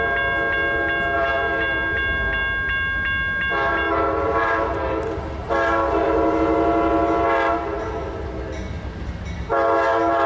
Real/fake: real